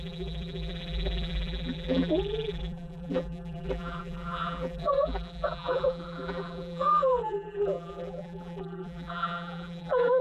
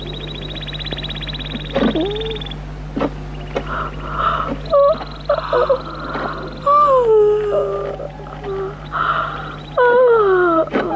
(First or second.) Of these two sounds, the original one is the second